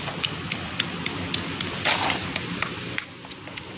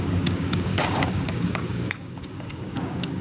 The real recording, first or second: first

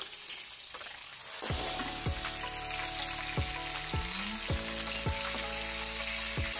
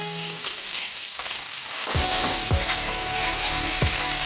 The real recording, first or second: first